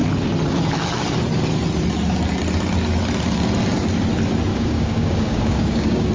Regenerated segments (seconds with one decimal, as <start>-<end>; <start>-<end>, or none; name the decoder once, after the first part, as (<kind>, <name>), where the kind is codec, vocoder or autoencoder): 4.5-6.1 (codec, DAC)

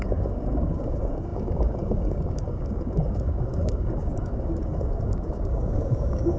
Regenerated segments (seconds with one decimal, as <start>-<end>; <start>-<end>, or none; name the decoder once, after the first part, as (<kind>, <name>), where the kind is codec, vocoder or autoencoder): 0.0-6.4 (codec, DAC)

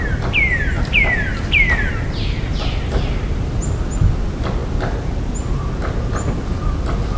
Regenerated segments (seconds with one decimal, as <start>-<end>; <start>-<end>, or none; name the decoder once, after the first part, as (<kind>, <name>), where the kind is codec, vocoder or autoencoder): none

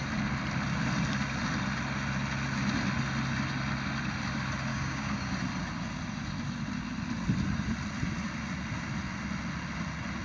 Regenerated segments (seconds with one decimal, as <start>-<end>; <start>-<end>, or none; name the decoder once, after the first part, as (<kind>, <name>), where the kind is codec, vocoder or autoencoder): 4.7-5.3 (codec, DAC)

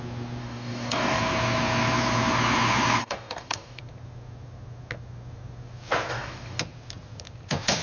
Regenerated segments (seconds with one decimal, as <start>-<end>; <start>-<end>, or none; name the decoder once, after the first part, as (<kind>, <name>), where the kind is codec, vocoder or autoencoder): 0.4-1.2 (codec, DAC); 3.0-3.8; 6.1-6.6

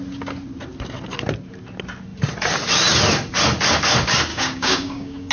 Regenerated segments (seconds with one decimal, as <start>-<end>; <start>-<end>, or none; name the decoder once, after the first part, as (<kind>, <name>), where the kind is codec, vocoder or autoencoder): 4.3-5.3 (codec, DAC)